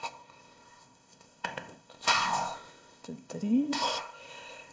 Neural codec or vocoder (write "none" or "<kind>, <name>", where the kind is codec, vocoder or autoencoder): codec, ZipCodec